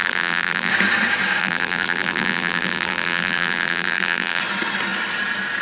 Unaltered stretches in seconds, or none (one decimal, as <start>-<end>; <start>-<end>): 0.7-1.4; 4.4-5.6